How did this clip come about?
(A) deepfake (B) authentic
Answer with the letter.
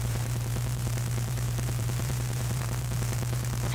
A